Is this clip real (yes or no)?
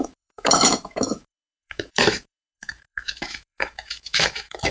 no